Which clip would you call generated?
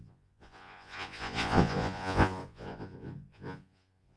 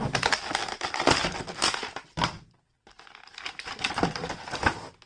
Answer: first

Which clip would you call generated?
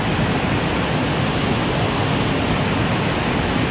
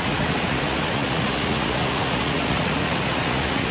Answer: second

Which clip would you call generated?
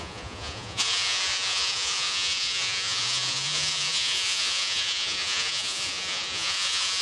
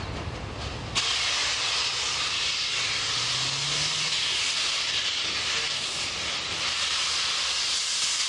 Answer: first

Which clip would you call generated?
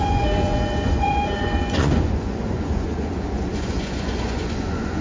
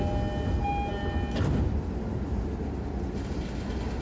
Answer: first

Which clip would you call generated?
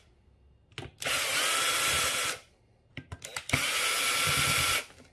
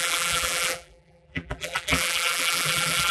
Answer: second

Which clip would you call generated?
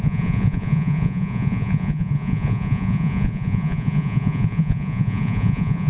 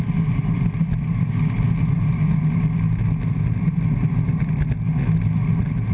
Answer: first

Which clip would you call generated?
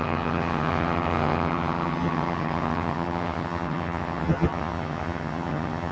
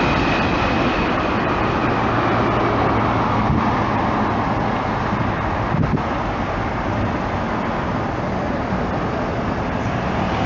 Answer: first